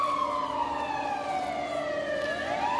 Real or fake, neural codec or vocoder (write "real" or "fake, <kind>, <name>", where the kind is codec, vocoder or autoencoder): real